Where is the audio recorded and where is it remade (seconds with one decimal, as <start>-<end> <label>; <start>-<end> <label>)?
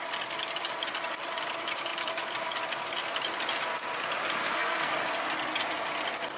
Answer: 0.0-4.4 recorded; 4.4-4.9 remade; 4.9-6.4 recorded